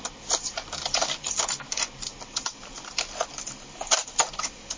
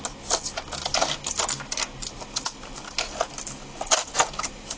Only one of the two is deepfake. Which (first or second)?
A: first